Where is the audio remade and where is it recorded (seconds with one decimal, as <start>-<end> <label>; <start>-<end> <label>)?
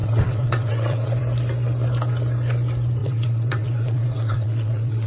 0.0-1.2 remade; 1.2-3.0 recorded; 3.0-5.1 remade